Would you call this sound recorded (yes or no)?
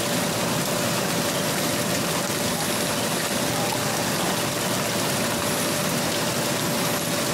yes